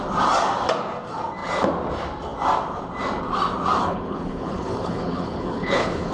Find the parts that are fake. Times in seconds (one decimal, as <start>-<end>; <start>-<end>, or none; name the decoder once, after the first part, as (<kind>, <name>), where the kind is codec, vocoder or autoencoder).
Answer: 3.8-6.1 (codec, HILCodec)